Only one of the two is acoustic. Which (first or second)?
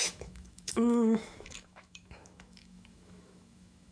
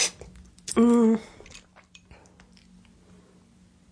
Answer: second